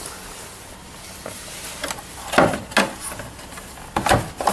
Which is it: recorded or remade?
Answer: recorded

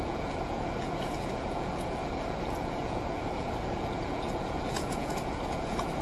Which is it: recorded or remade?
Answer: remade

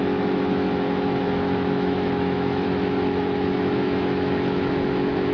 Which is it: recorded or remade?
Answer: remade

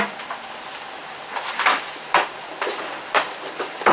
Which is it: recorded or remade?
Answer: remade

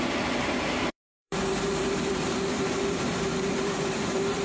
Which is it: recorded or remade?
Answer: remade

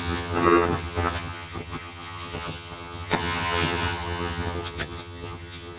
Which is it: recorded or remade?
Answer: remade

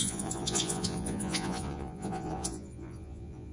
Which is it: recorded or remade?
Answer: remade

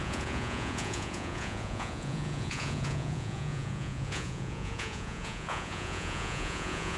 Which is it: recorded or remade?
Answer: remade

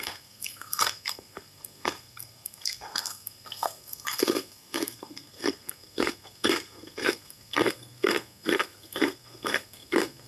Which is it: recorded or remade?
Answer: remade